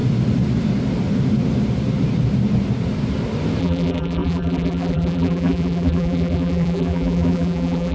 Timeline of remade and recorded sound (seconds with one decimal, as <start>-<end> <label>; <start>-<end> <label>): 0.0-3.6 recorded; 3.6-7.9 remade